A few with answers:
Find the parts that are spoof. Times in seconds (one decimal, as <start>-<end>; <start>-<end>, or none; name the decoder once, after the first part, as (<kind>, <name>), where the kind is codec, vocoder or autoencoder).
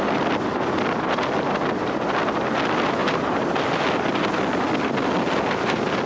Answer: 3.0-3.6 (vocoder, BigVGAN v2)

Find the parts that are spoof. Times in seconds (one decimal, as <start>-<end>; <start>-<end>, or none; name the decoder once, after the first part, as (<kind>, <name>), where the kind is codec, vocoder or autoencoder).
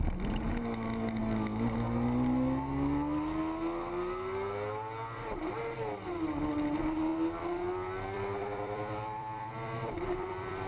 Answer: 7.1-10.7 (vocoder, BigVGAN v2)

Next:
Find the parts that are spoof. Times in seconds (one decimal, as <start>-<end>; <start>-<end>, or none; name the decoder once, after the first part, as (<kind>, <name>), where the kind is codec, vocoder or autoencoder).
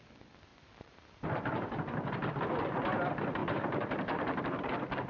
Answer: 0.5-2.3 (vocoder, BigVGAN v2); 3.4-5.1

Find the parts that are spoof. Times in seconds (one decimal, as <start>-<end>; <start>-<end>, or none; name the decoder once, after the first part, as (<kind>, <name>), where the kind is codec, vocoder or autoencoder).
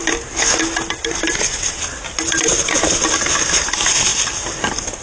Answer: 3.0-5.0 (vocoder, BigVGAN v2)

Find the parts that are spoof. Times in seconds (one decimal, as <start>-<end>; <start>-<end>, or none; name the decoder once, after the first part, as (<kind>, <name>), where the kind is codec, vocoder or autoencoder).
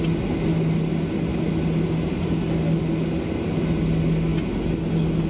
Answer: none